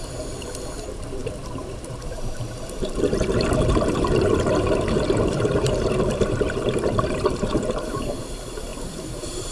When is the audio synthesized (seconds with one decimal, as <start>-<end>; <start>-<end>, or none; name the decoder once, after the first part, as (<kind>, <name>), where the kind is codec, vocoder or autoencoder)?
0.0-9.5 (vocoder, BigVGAN v2)